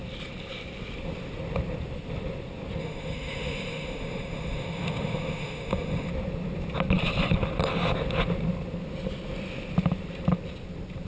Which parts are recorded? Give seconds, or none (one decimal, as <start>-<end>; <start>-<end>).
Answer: 0.0-2.8; 6.1-11.1